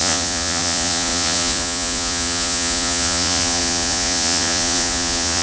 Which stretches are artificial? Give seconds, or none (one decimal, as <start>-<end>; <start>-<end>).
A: 0.0-5.4